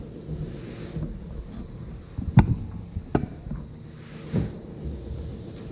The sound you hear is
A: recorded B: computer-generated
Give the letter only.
A